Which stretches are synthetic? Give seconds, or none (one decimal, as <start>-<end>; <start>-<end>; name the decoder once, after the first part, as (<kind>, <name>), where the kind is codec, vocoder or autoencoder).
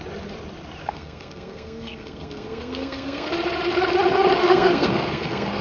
0.8-3.3 (codec, SNAC); 4.4-5.6